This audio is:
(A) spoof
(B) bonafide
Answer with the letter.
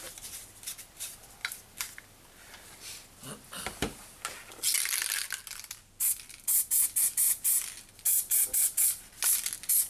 B